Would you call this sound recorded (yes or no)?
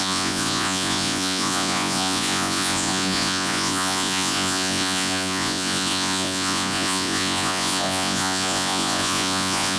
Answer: no